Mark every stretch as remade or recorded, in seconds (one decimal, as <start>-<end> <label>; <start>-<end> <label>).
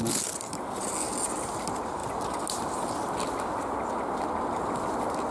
0.0-5.3 recorded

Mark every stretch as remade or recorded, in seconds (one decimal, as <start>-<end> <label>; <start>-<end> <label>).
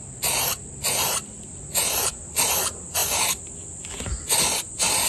0.0-5.1 recorded